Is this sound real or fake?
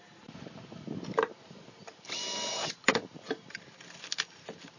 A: real